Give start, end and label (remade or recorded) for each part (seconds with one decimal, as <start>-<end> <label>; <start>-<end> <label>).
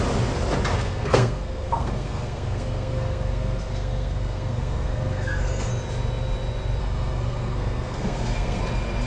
0.0-0.7 recorded; 0.7-5.7 remade; 5.7-6.8 recorded; 6.8-8.6 remade; 8.6-9.1 recorded